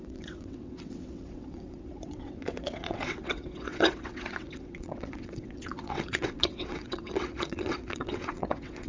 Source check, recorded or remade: remade